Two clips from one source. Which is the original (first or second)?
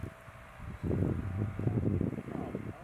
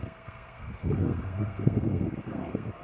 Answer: first